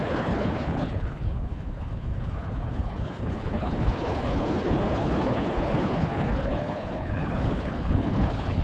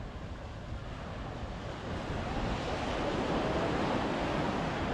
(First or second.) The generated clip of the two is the first